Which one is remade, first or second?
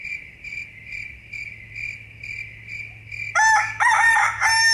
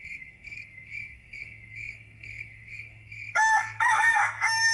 second